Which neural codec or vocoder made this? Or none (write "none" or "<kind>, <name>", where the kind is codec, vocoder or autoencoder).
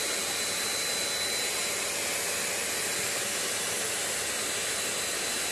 none